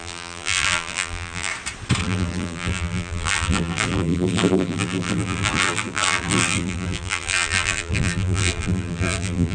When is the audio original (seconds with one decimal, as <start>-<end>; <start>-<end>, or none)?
1.5-2.0